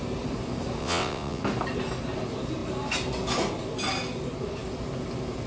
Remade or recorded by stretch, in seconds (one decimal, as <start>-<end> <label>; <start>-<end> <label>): 0.0-0.8 recorded; 0.8-1.4 remade; 1.4-5.5 recorded

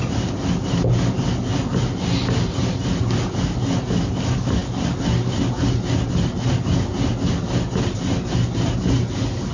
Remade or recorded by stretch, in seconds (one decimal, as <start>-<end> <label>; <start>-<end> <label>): 0.0-9.5 recorded

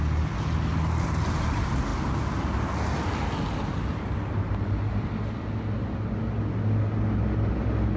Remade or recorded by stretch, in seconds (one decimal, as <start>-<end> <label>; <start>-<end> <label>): 0.0-8.0 recorded

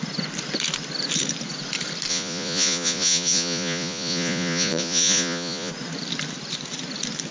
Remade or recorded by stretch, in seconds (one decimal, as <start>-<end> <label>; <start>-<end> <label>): 0.0-2.1 recorded; 2.1-5.7 remade; 5.7-7.3 recorded